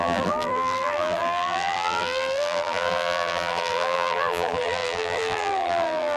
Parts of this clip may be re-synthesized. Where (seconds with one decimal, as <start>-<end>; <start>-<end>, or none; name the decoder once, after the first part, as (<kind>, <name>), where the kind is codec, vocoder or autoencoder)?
0.0-6.2 (vocoder, BigVGAN v2)